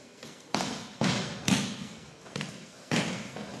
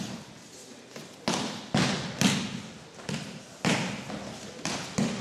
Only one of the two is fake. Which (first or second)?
first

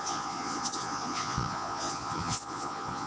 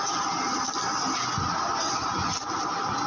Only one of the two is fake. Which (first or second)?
first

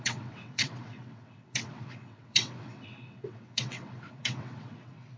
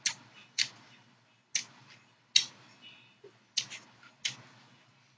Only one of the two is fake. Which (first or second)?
first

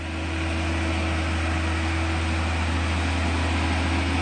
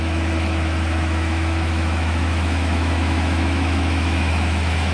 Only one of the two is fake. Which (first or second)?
second